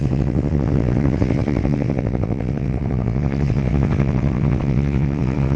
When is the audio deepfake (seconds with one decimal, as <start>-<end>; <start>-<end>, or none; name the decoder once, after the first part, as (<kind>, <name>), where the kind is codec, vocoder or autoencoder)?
0.0-5.6 (vocoder, WaveNeXt)